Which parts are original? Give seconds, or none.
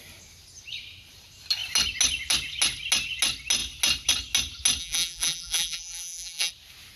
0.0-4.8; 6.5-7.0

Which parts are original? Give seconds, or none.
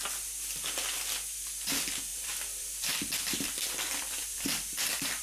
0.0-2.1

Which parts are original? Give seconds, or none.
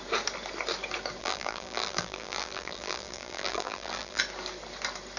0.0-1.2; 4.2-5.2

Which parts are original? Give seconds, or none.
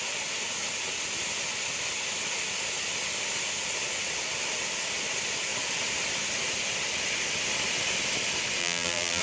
0.0-8.6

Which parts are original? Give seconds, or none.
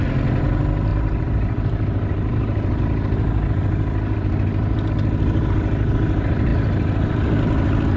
0.0-0.9; 2.8-8.0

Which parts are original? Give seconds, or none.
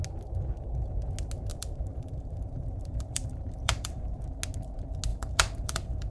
0.0-1.5; 4.2-5.1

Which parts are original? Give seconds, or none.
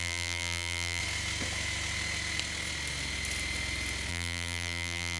1.0-4.1